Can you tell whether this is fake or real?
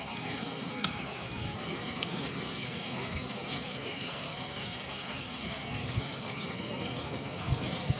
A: fake